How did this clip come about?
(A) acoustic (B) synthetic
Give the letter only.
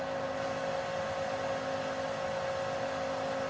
A